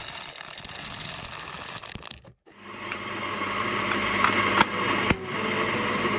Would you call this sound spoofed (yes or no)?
no